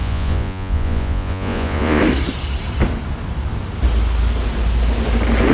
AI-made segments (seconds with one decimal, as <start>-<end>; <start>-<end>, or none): 0.0-2.0